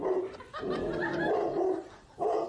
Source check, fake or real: real